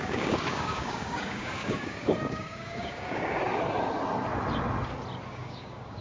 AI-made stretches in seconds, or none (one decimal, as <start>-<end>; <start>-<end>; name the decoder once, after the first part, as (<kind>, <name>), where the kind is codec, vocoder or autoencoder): 0.0-3.4 (codec, DAC); 5.3-6.0